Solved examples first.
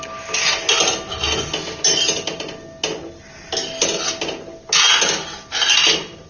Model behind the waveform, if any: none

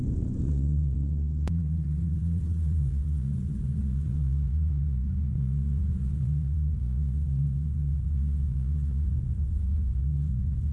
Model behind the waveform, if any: vocoder, Vocos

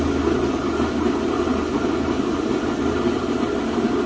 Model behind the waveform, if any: none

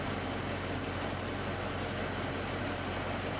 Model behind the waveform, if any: none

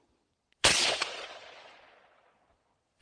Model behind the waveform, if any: vocoder, Vocos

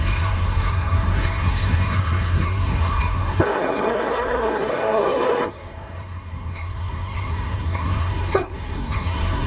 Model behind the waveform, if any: codec, SNAC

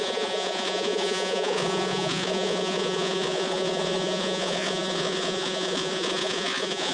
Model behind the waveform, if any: vocoder, Vocos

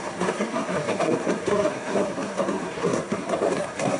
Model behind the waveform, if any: codec, SNAC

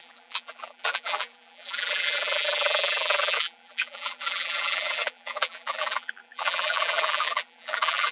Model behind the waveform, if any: vocoder, BigVGAN v2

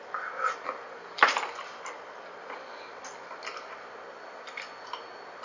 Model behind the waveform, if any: none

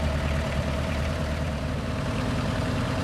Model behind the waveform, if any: vocoder, BigVGAN v2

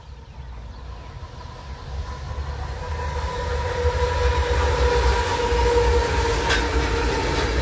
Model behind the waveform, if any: none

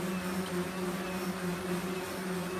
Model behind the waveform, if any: none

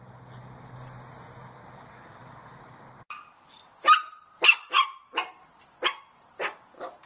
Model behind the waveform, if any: none